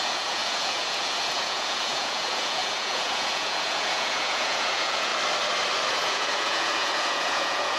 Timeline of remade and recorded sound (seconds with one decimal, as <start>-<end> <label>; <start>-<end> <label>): 0.0-5.1 remade; 5.1-5.9 recorded; 5.9-7.8 remade